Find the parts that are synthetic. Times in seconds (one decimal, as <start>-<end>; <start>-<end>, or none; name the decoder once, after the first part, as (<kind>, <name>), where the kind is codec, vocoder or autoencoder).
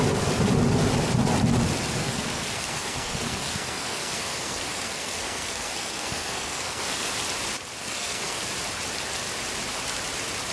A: 2.0-7.1 (codec, SNAC); 7.8-8.4